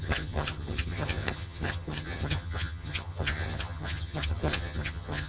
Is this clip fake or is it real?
fake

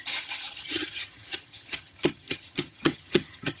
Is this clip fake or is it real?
fake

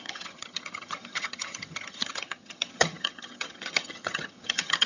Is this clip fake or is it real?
fake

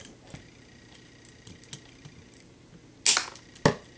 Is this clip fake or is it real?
real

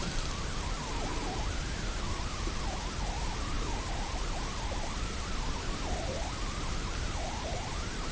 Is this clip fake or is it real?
real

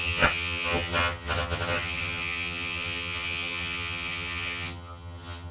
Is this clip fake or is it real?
fake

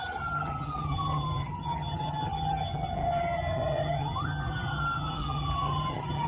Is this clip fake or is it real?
fake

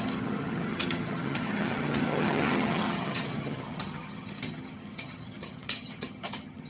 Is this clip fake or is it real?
fake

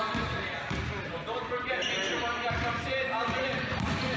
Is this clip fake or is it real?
real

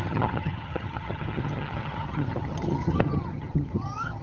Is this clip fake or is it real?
fake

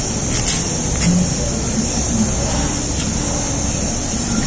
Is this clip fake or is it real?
real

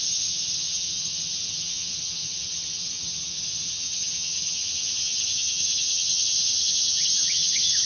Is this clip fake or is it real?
fake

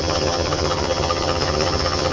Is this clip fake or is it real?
fake